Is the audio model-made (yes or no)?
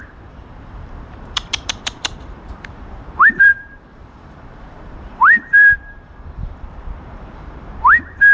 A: yes